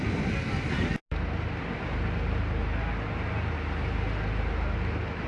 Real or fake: real